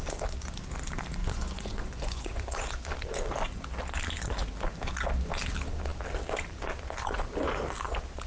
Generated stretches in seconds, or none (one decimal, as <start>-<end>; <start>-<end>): 1.2-2.8